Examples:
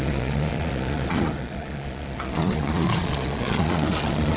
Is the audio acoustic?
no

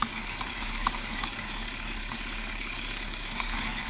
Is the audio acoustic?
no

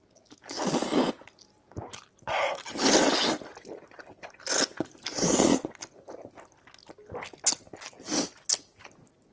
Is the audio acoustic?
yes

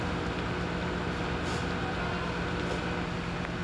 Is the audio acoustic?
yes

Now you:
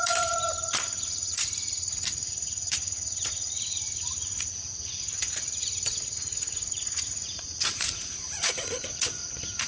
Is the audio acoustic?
no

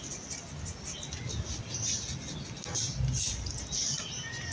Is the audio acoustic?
yes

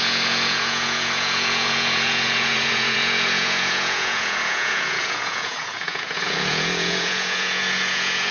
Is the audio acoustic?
no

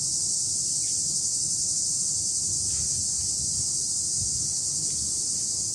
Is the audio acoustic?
yes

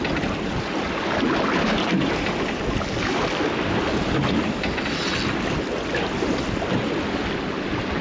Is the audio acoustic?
yes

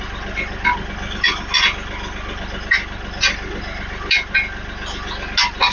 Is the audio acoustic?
yes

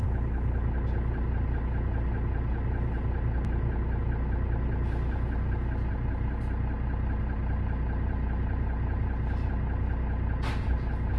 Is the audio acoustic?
yes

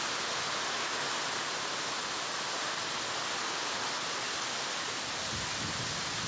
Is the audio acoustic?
yes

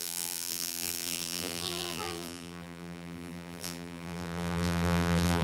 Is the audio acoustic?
no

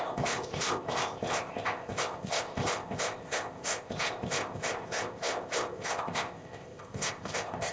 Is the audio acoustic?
no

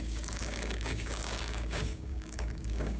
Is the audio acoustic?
no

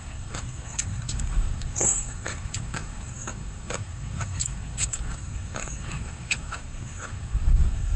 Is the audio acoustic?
no